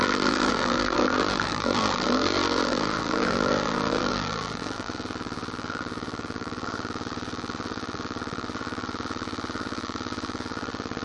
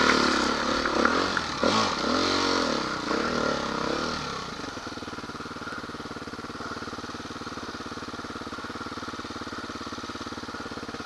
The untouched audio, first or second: second